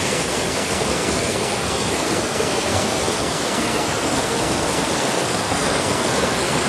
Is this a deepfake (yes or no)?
yes